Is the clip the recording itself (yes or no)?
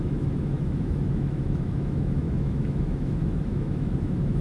no